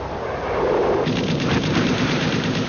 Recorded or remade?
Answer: remade